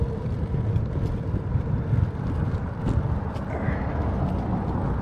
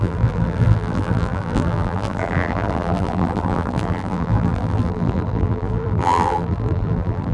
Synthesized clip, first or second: second